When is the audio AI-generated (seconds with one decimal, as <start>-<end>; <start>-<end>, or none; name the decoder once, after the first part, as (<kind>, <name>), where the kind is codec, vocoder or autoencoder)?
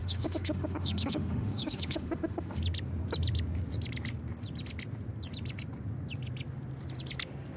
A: 0.0-2.6 (autoencoder, DAC-VAE)